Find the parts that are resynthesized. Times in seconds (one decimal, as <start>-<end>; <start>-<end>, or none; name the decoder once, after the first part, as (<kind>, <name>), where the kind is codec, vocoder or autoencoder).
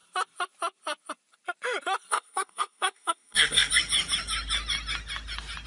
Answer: 2.1-3.7 (codec, SNAC)